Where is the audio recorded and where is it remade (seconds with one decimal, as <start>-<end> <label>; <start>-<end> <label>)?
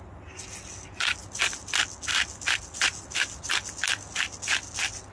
0.0-5.1 recorded